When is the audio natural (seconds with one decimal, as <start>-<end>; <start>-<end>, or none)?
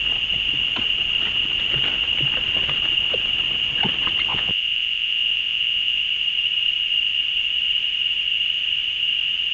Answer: 0.0-4.3; 6.0-9.5